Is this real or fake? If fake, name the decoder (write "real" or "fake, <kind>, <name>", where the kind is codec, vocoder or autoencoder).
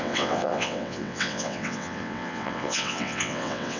fake, vocoder, WaveNeXt